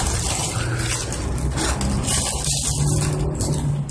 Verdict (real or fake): real